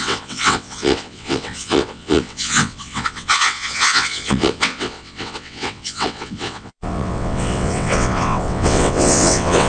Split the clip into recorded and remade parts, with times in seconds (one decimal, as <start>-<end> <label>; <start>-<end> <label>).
0.0-9.7 remade